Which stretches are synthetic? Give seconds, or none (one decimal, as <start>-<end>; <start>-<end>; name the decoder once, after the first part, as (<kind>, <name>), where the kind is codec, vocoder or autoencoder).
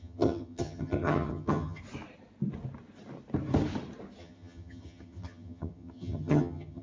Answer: 0.0-1.8 (vocoder, HiFi-GAN); 4.2-6.8